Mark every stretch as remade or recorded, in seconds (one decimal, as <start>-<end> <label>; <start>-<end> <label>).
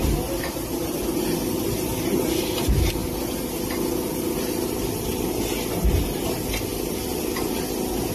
0.0-8.1 recorded